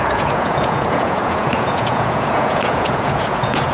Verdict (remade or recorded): remade